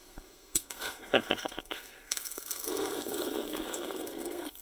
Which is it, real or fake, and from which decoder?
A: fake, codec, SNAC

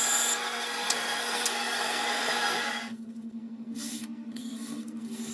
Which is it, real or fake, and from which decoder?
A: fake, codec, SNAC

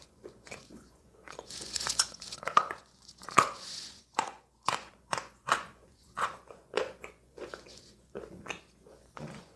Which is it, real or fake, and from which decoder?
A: fake, vocoder, Vocos